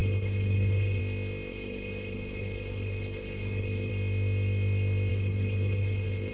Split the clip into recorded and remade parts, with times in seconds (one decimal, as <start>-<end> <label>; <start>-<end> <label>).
0.0-1.0 remade; 1.0-1.5 recorded; 1.5-3.9 remade; 3.9-5.1 recorded; 5.1-6.3 remade